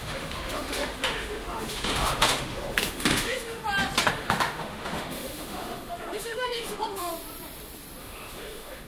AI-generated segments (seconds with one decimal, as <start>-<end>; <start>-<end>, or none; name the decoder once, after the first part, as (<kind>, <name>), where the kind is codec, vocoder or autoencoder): 0.0-3.6 (autoencoder, DAC-VAE); 4.1-7.1; 8.0-8.9